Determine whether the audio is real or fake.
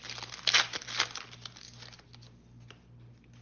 real